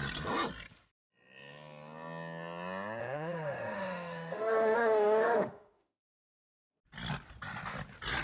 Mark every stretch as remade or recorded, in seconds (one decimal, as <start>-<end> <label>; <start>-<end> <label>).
0.0-3.0 recorded; 3.0-6.7 remade; 6.7-8.2 recorded